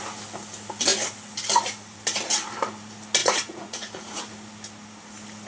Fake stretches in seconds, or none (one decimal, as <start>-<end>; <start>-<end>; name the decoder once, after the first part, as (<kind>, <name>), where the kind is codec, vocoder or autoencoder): 3.2-4.2 (vocoder, Vocos)